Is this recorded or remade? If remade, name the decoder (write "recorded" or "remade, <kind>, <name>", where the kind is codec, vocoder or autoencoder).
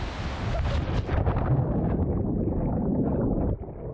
recorded